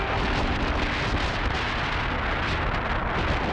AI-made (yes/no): no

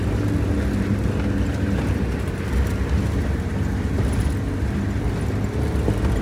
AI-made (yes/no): no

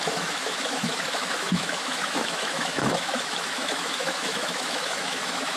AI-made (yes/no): yes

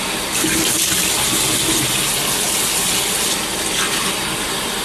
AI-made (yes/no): no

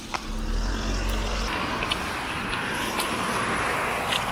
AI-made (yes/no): no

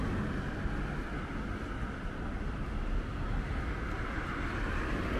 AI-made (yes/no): no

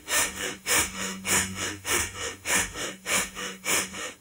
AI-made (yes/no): yes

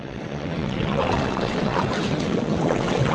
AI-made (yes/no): yes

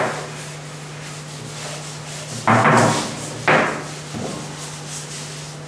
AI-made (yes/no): no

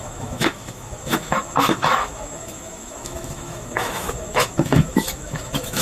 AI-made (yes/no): yes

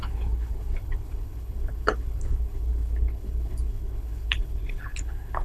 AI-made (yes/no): yes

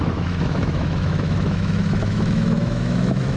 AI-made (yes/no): yes